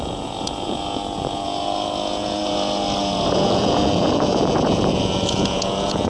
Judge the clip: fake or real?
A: fake